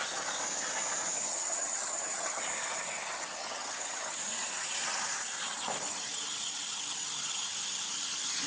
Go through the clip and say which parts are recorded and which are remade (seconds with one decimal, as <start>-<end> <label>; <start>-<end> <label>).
0.0-1.3 recorded; 1.3-2.4 remade; 2.4-3.4 recorded; 3.4-4.2 remade; 4.2-8.5 recorded